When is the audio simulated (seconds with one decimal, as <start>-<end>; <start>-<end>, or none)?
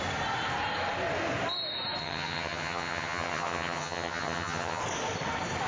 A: 2.0-4.8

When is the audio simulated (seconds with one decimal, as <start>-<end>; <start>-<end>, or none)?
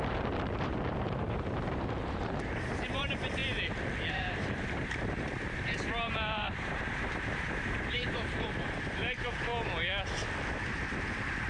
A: 0.0-3.4; 4.1-9.5; 10.5-11.5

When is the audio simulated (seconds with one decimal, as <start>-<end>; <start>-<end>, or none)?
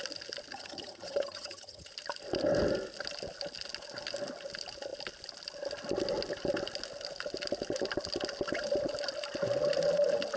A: 0.5-1.9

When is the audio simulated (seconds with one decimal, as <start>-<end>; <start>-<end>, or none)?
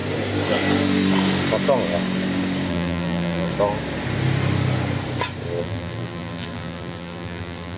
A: 2.7-3.5; 5.6-7.8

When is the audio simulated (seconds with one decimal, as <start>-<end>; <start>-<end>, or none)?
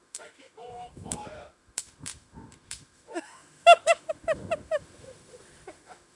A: 0.0-6.2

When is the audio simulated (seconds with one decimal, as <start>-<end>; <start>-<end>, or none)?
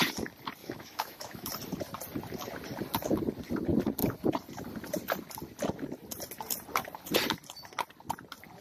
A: 0.6-1.5